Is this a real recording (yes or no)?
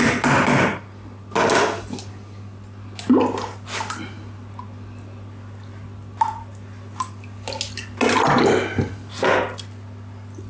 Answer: yes